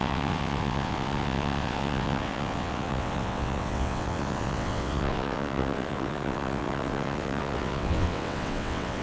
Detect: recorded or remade remade